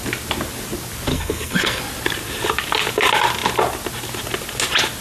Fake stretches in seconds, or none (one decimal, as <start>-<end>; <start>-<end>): 1.1-1.8